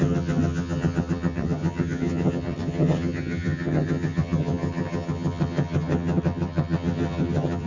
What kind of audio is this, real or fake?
fake